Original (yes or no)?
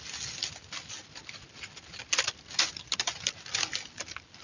yes